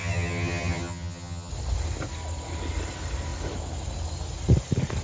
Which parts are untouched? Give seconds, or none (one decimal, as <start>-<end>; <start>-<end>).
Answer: 1.5-5.0